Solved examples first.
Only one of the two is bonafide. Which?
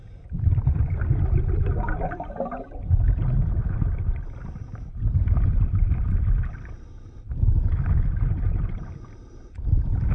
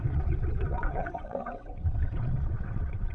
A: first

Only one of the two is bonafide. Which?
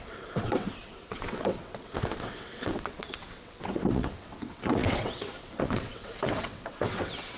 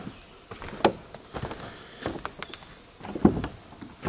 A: second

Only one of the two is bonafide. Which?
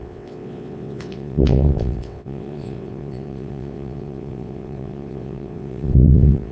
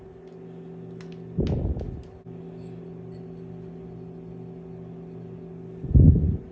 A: second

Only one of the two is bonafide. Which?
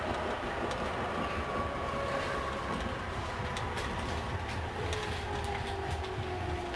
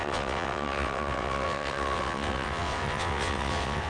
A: first